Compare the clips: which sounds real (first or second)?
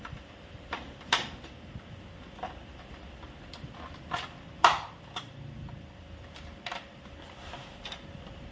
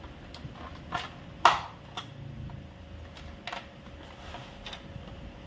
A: second